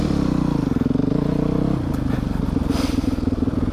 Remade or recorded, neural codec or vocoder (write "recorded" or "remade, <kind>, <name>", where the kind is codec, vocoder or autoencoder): recorded